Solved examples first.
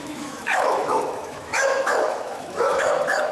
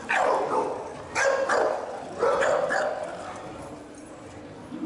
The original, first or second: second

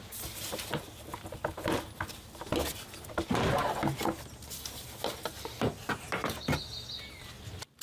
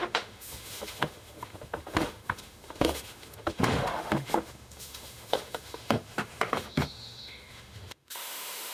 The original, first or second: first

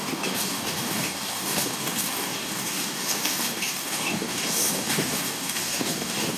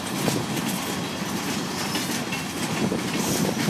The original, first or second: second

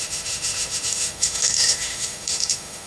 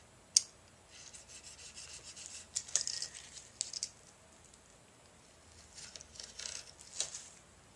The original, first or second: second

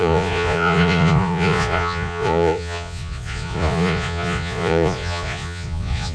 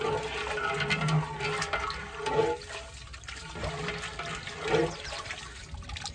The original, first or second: second